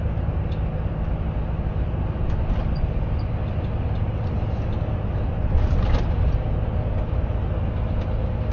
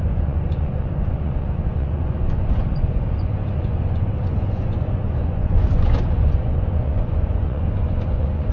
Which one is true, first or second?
first